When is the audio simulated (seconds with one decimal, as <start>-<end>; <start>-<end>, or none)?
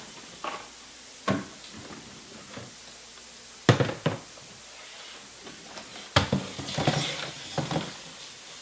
none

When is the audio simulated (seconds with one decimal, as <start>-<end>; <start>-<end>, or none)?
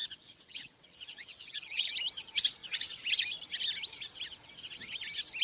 0.0-1.9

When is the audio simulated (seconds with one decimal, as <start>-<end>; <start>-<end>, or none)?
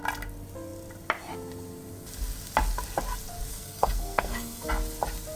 3.5-4.7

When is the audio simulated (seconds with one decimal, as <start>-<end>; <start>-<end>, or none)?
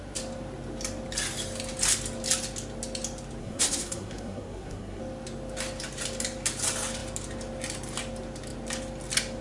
3.4-5.0